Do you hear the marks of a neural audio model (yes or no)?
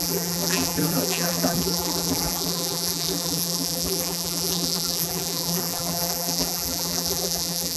yes